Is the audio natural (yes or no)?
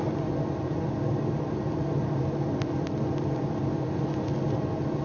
no